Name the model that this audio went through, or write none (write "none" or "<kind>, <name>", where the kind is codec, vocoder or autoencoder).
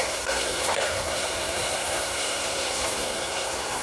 codec, SNAC